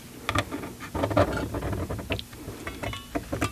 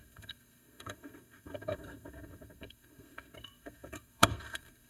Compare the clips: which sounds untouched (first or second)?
first